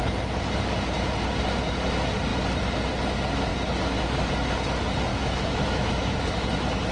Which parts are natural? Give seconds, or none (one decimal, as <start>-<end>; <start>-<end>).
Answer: 0.0-5.1; 6.2-6.9

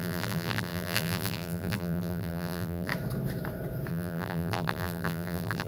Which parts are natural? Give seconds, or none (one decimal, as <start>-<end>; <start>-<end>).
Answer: 2.9-3.9

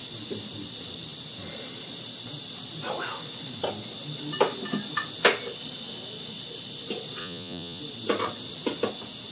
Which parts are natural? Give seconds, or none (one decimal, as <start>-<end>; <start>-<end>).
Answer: 0.0-7.2; 7.8-9.3

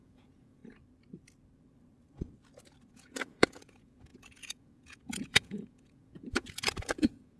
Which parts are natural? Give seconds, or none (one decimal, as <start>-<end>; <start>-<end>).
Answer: 0.6-2.9